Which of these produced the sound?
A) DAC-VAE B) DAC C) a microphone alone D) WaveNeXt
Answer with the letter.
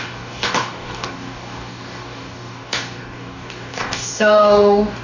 B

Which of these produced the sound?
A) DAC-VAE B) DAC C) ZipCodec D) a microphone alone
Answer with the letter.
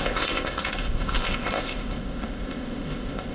C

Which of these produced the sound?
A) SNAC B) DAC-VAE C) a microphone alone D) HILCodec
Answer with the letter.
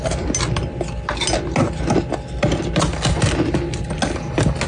C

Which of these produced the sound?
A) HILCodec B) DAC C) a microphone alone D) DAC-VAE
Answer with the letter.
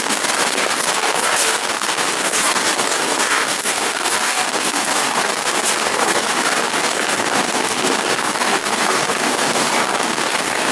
B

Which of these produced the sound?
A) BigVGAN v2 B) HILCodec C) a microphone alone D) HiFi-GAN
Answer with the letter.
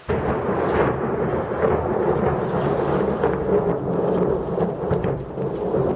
C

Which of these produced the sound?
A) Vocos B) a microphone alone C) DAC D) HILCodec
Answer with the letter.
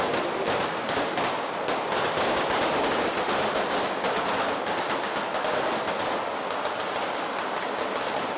B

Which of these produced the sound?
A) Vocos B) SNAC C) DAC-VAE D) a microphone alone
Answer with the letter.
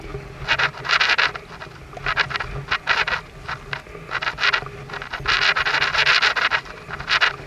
D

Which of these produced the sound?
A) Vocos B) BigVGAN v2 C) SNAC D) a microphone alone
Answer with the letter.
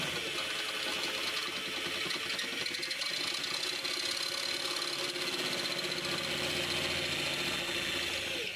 D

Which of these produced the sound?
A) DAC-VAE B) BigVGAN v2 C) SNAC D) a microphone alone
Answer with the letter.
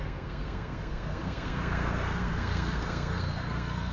C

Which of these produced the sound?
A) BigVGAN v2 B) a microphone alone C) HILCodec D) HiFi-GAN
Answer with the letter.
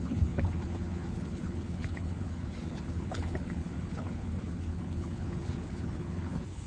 C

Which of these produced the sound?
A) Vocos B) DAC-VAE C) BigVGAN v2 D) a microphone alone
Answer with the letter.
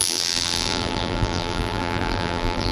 C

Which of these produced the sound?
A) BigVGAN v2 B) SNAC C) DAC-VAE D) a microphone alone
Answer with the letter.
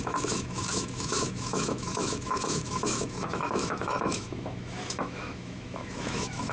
C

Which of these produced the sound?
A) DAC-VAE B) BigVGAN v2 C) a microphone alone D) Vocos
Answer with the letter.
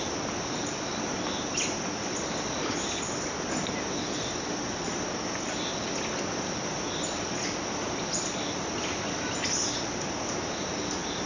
C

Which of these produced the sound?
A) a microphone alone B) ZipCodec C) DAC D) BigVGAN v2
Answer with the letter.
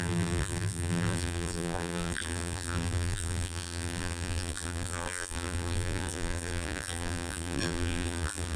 D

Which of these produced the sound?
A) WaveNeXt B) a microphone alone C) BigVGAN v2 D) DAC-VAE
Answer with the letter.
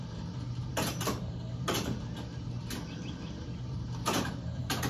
C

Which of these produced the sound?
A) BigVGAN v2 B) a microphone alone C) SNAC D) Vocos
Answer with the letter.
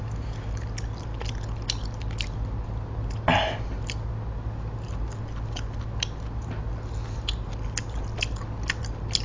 B